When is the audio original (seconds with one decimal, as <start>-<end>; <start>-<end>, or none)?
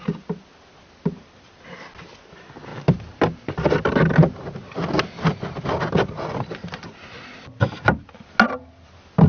0.0-9.3